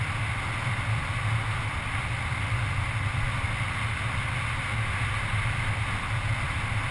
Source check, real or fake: real